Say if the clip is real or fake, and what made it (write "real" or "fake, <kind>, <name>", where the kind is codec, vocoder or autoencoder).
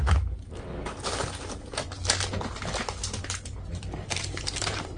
real